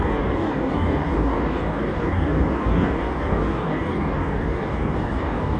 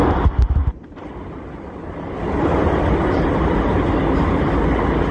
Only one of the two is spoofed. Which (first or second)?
first